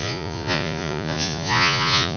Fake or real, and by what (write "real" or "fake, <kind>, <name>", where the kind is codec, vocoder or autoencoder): fake, vocoder, Vocos